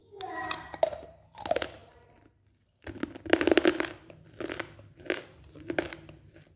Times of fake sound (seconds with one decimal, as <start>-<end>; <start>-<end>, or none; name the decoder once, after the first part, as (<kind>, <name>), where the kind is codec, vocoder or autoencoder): 0.0-0.6 (codec, DAC)